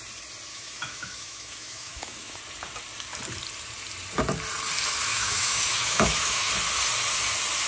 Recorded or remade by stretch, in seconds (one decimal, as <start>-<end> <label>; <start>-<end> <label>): 0.0-0.5 recorded; 0.5-2.4 remade; 2.4-5.1 recorded; 5.1-6.5 remade; 6.5-7.7 recorded